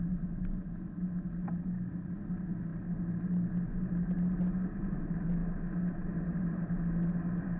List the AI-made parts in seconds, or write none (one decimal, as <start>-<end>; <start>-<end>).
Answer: none